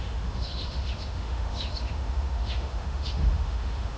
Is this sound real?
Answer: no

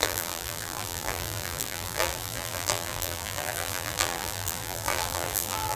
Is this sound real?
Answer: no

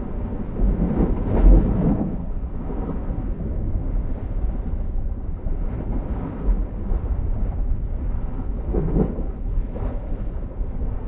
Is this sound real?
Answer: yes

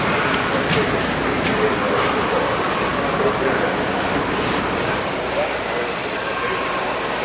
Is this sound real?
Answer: no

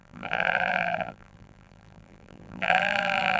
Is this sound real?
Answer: no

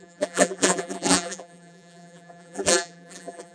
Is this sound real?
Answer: no